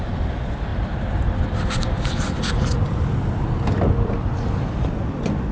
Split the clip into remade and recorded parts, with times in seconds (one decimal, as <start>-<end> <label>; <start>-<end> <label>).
0.0-5.5 recorded